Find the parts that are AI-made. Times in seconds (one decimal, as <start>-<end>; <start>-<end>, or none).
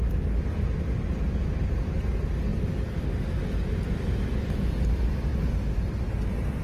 none